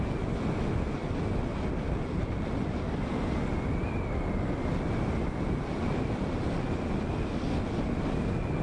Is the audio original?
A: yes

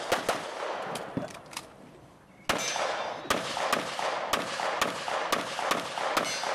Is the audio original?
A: yes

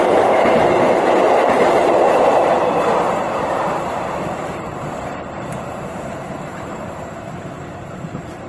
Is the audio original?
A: no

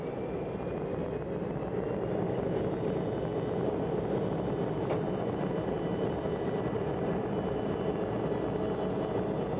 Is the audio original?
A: yes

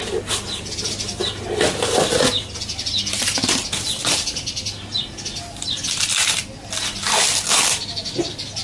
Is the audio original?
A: yes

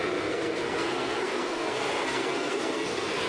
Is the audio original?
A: no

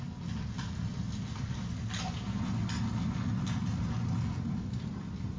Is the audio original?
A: yes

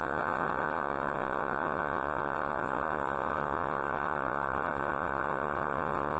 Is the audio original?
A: no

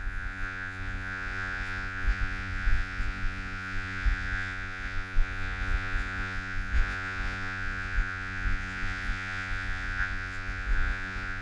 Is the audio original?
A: no